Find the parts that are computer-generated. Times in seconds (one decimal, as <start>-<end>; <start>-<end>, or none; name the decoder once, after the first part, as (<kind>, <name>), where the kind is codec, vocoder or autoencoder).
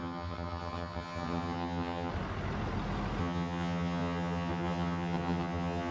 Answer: 0.0-2.1 (vocoder, HiFi-GAN); 3.2-5.9